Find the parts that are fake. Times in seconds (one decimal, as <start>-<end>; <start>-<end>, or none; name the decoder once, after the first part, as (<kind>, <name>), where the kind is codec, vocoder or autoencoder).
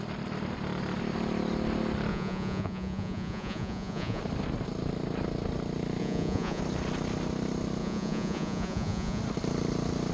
2.1-4.2 (vocoder, Vocos); 6.0-6.6; 7.8-9.2